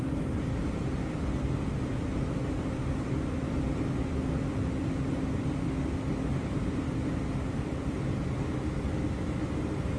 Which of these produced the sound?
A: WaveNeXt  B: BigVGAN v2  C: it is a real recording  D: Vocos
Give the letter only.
C